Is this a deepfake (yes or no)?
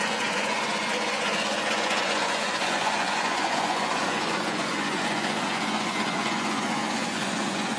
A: yes